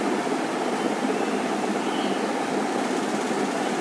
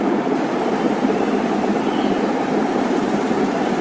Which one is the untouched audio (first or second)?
first